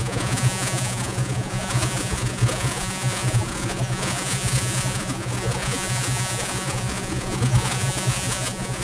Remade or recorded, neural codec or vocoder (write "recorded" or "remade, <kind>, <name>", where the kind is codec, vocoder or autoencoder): remade, vocoder, Vocos